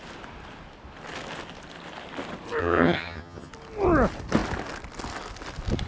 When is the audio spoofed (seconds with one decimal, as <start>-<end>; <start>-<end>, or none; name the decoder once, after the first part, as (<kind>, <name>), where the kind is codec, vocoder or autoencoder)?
2.6-3.5 (vocoder, HiFi-GAN)